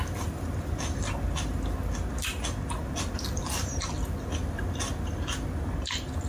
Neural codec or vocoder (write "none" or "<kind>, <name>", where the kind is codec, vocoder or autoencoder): none